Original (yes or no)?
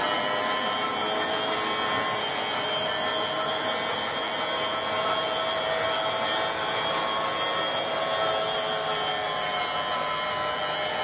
yes